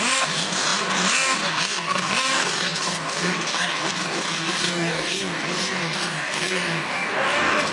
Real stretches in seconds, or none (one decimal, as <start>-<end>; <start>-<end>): none